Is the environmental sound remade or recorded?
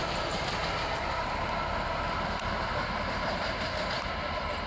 recorded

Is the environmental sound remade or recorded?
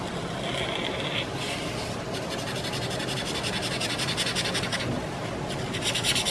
recorded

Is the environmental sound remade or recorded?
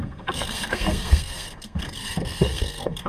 remade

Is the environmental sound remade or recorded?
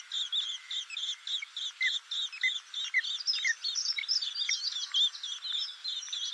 recorded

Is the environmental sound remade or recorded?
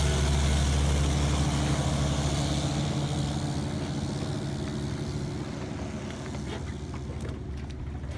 recorded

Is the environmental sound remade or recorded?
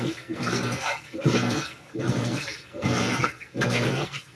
remade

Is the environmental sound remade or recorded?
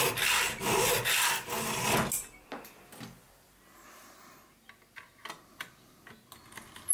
recorded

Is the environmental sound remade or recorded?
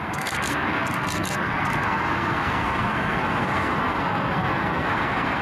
remade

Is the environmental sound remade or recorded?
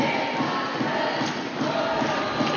recorded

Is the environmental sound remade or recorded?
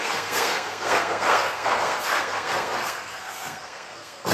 remade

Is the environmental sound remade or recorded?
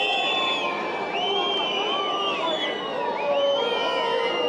recorded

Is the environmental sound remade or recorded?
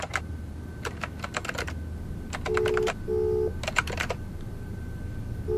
recorded